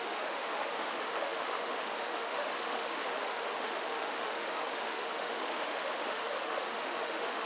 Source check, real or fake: fake